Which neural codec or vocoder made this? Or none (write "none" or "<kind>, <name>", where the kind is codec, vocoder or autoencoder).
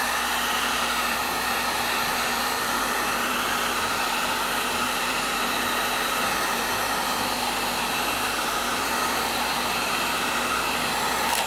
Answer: vocoder, BigVGAN v2